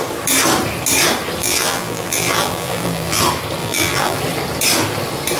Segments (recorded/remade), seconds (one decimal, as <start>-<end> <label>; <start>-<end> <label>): 0.0-1.4 recorded; 1.4-3.2 remade; 3.2-3.6 recorded; 3.6-4.2 remade; 4.2-5.4 recorded